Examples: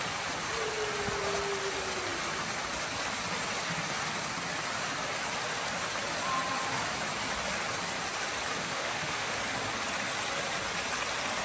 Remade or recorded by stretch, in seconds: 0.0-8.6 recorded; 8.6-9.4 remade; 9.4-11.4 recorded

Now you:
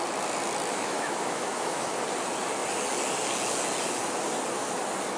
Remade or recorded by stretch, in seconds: 0.0-0.7 recorded; 0.7-1.9 remade; 1.9-5.2 recorded

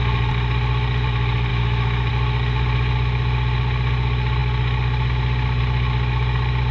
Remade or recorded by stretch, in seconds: 0.0-1.5 recorded; 1.5-2.1 remade; 2.1-6.7 recorded

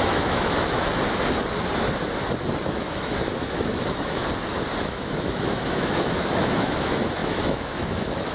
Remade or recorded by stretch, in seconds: 0.0-0.9 remade; 0.9-2.7 recorded; 2.7-4.2 remade; 4.2-4.8 recorded; 4.8-8.3 remade

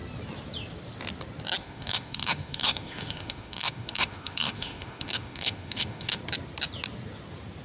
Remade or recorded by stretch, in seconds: 0.0-1.6 recorded; 1.6-6.2 remade; 6.2-7.6 recorded

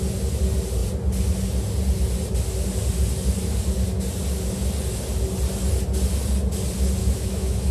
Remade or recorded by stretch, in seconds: 0.0-7.0 recorded; 7.0-7.7 remade